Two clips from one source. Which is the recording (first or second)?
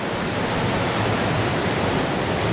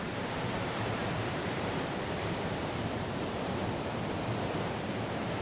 first